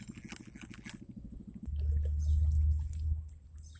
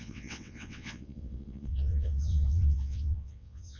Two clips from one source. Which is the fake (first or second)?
second